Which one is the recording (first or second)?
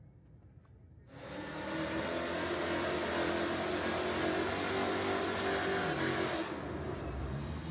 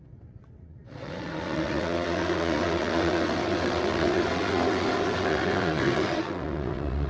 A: first